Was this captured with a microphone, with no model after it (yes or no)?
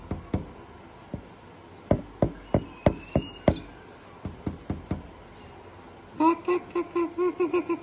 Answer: yes